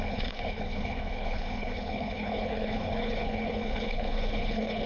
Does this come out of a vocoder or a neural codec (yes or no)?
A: yes